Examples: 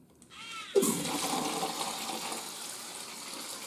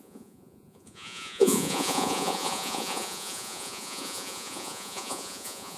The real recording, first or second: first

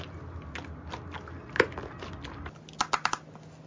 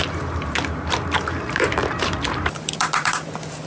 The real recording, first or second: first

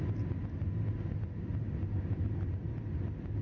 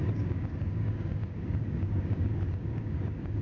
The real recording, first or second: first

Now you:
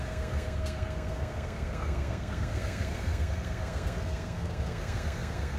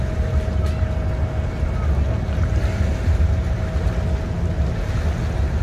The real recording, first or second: second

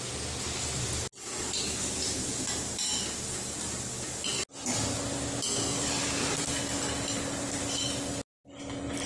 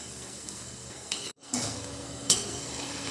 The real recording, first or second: first